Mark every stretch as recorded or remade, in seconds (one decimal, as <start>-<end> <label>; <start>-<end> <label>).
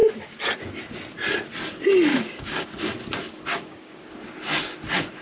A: 0.0-2.1 recorded; 2.1-2.7 remade; 2.7-3.5 recorded; 3.5-4.1 remade; 4.1-5.2 recorded